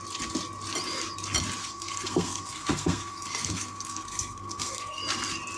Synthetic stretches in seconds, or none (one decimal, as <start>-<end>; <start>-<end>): 1.6-5.0